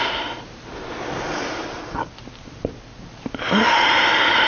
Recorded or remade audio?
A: recorded